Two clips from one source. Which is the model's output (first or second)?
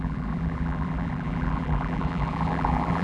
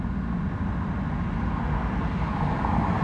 first